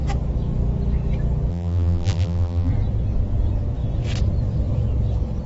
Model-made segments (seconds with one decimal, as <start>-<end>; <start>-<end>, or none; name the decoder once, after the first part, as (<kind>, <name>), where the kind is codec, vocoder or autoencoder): 1.5-2.7 (vocoder, BigVGAN v2)